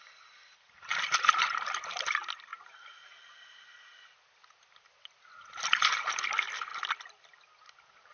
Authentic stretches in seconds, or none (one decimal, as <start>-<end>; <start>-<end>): 2.5-5.9; 6.7-8.1